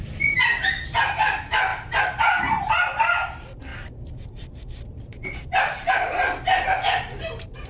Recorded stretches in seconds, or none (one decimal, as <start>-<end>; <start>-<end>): 0.0-1.7; 2.8-3.7; 5.9-7.7